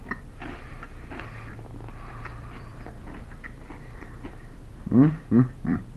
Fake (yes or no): yes